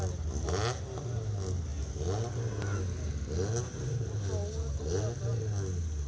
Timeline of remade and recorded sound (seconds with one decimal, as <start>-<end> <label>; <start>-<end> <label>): 0.0-6.1 recorded

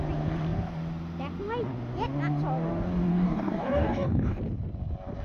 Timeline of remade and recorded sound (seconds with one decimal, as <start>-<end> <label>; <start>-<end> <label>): 0.0-3.1 recorded; 3.1-4.4 remade; 4.4-5.2 recorded

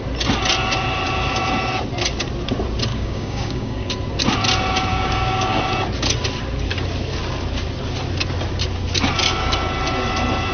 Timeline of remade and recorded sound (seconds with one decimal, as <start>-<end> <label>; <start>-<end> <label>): 0.0-2.9 recorded; 2.9-3.9 remade; 3.9-4.9 recorded; 4.9-5.6 remade; 5.6-10.5 recorded

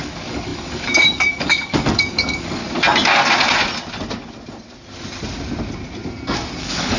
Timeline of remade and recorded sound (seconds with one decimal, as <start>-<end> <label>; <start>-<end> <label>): 0.0-2.6 remade; 2.6-6.6 recorded; 6.6-7.0 remade

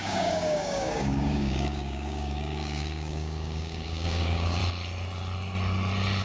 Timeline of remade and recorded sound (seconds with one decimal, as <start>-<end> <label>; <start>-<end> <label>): 0.0-4.6 remade; 4.6-6.2 recorded

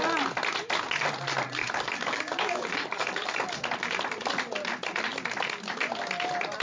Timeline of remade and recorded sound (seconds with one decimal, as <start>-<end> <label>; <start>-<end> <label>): 0.0-1.6 recorded; 1.6-3.5 remade; 3.5-6.6 recorded

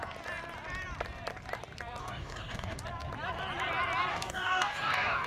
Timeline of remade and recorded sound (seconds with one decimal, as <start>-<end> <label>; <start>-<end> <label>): 0.0-2.0 recorded; 2.0-2.8 remade; 2.8-4.1 recorded; 4.1-5.3 remade